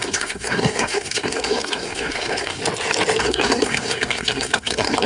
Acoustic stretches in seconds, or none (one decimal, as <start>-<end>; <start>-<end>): 2.6-3.2